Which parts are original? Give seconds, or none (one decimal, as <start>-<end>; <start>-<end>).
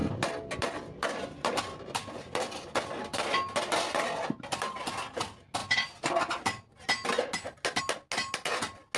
0.0-9.0